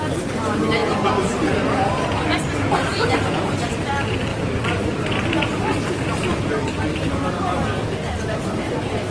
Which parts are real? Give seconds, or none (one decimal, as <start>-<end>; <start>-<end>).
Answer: 0.0-9.1